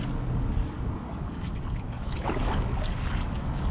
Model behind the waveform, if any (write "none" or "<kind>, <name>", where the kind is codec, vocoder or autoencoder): codec, DAC